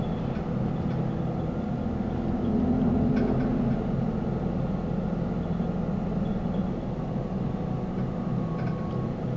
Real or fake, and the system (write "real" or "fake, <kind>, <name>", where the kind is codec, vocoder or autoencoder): real